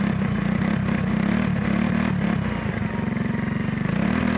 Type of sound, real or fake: real